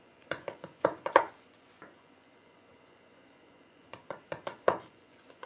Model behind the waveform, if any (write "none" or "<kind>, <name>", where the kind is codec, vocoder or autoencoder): vocoder, Vocos